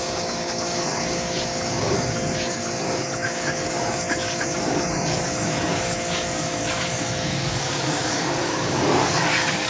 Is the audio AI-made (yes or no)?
yes